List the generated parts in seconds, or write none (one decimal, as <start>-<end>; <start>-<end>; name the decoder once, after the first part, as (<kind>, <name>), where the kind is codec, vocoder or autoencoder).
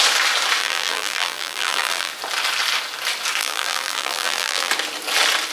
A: 0.6-2.1 (vocoder, BigVGAN v2); 3.4-4.7